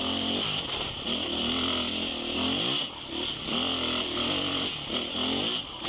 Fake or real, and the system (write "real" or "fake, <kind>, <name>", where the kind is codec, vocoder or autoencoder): real